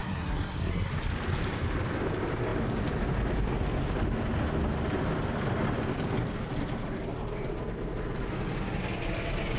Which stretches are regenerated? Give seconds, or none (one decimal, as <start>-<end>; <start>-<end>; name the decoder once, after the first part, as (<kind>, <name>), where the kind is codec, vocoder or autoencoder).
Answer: 0.0-0.9 (codec, SNAC)

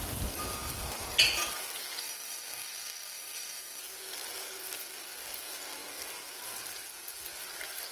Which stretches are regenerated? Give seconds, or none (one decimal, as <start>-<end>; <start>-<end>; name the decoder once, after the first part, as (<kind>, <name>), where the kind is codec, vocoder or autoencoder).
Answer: 2.0-3.8 (codec, DAC)

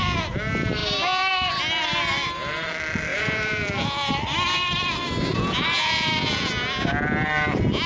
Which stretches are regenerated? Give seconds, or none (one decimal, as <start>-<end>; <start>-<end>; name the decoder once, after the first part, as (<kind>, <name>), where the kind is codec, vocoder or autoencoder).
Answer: 3.1-3.7 (vocoder, Vocos); 5.3-6.5

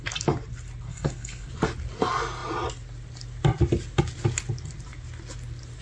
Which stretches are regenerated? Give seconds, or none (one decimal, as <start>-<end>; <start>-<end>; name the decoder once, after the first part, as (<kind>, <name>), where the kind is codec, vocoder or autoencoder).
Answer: 0.9-1.5 (codec, SNAC)

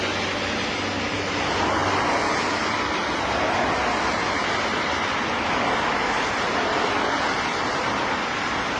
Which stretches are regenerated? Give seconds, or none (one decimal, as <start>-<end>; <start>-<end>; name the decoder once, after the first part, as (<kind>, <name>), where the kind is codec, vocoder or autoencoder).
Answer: none

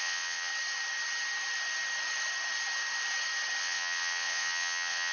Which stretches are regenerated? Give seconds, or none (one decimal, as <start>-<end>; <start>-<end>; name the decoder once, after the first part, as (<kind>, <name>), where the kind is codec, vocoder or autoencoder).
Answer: 0.0-0.5 (vocoder, WaveNeXt); 3.6-5.1

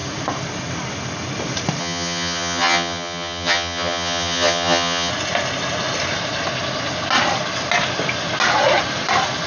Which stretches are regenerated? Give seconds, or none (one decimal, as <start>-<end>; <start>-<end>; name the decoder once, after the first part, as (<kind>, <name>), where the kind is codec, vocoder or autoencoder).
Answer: 1.8-5.1 (vocoder, HiFi-GAN)